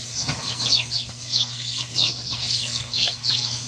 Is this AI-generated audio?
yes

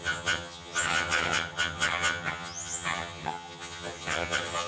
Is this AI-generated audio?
yes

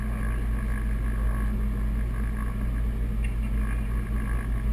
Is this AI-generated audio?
no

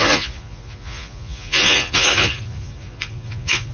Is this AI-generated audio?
yes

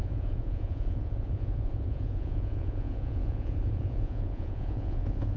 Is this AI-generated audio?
yes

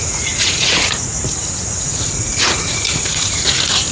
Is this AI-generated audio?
yes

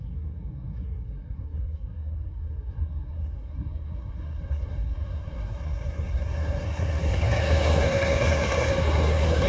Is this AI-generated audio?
yes